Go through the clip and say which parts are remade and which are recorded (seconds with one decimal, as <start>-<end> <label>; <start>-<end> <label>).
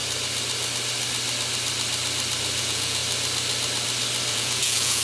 0.0-2.6 recorded; 2.6-3.0 remade; 3.0-4.3 recorded; 4.3-5.0 remade